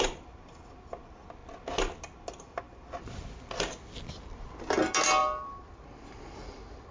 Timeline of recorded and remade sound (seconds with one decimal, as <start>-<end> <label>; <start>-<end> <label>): 0.0-6.9 recorded